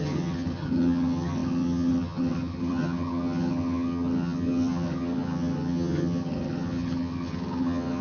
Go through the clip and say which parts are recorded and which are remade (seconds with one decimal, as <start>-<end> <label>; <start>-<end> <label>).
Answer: 0.0-8.0 remade